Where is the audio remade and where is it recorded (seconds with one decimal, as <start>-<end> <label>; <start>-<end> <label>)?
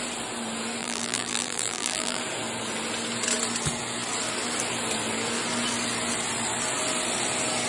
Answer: 0.0-0.8 recorded; 0.8-2.2 remade; 2.2-7.7 recorded